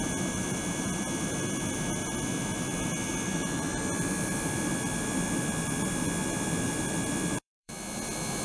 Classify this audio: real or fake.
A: fake